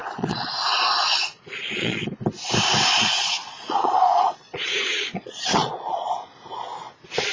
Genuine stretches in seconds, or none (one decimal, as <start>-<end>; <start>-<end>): 2.1-2.9; 6.1-7.3